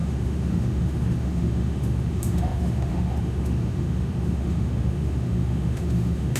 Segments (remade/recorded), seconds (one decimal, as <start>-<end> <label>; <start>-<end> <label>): 0.0-6.4 remade

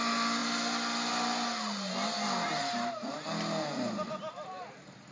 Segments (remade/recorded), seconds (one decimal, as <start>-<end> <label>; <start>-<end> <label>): 0.0-5.1 recorded

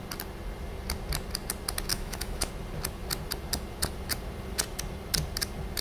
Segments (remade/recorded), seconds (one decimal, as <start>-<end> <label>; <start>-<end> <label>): 0.0-1.9 recorded; 1.9-2.5 remade; 2.5-5.8 recorded

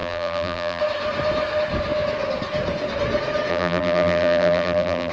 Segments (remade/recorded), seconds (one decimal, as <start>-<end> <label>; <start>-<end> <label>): 0.0-0.8 remade; 0.8-3.5 recorded; 3.5-5.1 remade

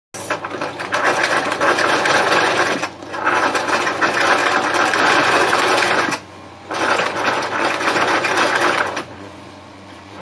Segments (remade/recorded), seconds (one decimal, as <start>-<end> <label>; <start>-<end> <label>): 0.0-0.7 recorded; 0.7-4.4 remade; 4.4-5.0 recorded; 5.0-10.2 remade

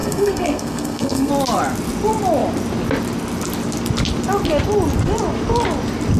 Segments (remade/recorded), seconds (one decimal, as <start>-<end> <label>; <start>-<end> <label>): 0.0-1.3 remade; 1.3-6.2 recorded

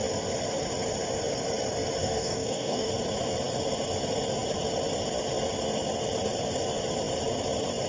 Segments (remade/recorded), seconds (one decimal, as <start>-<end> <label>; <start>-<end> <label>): 0.0-2.0 recorded; 2.0-2.9 remade; 2.9-7.9 recorded